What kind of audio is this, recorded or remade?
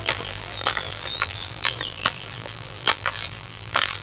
remade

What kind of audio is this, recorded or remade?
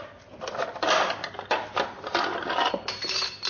recorded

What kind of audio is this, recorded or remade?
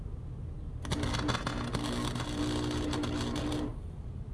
recorded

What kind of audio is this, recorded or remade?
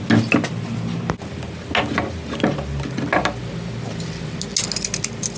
recorded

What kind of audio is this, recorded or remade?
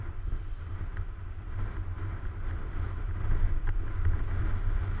recorded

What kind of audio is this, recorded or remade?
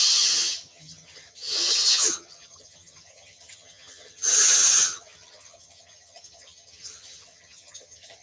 remade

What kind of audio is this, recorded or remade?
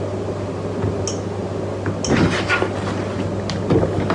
recorded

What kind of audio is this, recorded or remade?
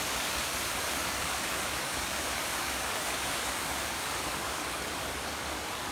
remade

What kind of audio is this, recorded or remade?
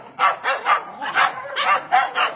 recorded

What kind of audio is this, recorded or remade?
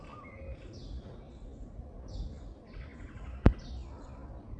recorded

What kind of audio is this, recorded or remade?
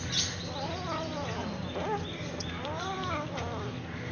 recorded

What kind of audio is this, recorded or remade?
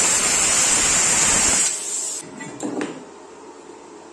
recorded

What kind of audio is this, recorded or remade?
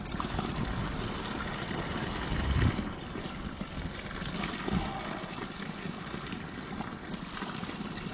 recorded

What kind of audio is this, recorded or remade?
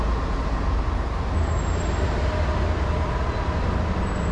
recorded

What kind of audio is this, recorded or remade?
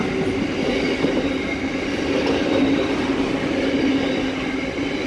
recorded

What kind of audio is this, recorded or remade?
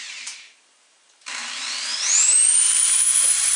remade